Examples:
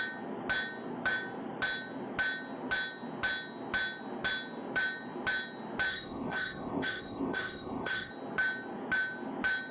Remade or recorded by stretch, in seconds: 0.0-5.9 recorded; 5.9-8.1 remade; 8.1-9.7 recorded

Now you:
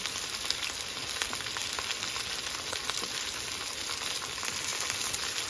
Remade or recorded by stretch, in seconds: 0.0-5.5 recorded

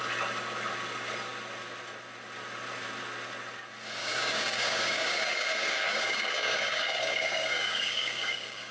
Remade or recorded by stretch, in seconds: 0.0-4.0 recorded; 4.0-8.7 remade